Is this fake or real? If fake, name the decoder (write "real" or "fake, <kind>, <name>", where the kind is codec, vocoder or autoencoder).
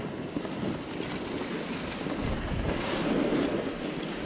real